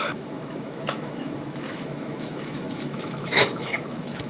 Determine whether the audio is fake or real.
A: fake